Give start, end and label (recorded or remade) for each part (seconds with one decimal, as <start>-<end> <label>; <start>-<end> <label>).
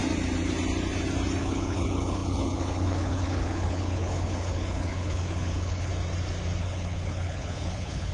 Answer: 0.0-1.4 recorded; 1.4-5.9 remade; 5.9-6.6 recorded; 6.6-8.1 remade